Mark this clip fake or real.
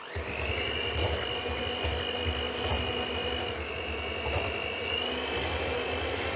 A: real